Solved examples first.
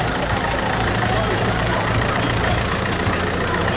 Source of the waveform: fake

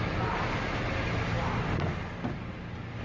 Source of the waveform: real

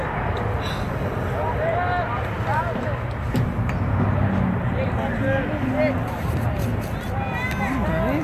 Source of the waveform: real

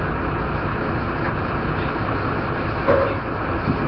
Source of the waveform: real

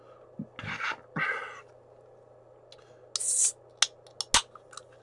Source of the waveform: real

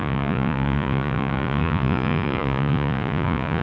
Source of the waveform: fake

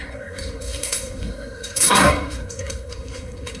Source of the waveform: fake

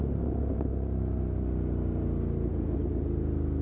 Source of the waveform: real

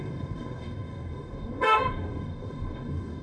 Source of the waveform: fake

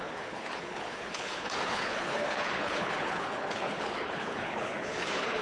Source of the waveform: fake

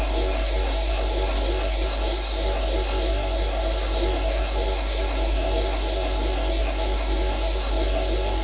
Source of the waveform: fake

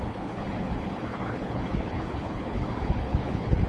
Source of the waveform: fake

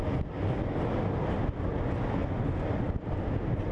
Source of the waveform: real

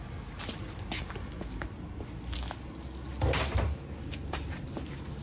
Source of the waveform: real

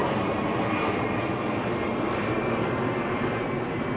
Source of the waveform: fake